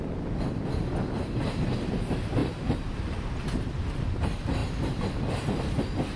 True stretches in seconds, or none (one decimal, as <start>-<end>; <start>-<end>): 0.0-2.4; 3.2-6.2